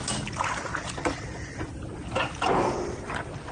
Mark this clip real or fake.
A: real